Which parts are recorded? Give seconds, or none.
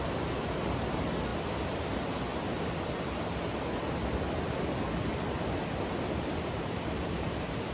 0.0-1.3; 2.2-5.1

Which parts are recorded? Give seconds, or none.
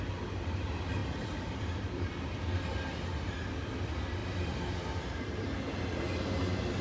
0.0-1.0; 2.1-4.2; 5.0-6.8